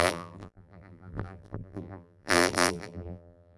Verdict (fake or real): fake